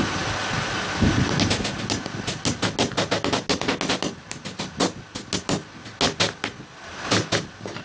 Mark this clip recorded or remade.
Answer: recorded